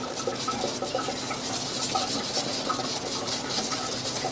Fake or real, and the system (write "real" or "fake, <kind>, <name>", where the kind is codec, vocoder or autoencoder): real